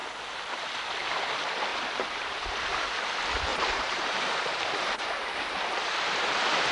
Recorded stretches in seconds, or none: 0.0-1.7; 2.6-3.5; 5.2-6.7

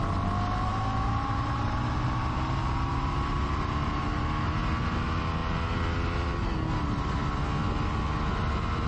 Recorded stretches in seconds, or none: 0.0-0.7; 4.0-8.9